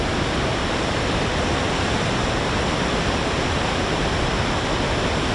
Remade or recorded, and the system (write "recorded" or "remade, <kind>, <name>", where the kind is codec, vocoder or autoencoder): recorded